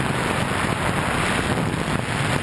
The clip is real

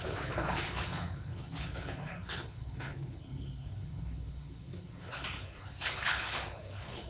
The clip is fake